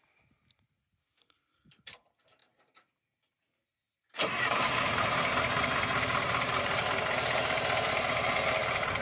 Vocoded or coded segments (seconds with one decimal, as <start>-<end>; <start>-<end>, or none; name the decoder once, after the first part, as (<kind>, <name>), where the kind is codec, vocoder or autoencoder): 2.4-6.6 (vocoder, BigVGAN v2)